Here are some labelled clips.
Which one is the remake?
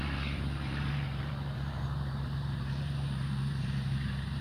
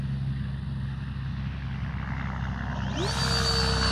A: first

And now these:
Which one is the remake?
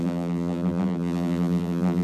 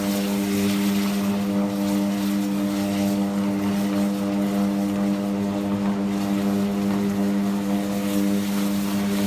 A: first